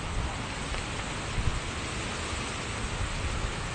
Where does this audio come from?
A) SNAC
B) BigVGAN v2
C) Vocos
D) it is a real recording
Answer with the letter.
D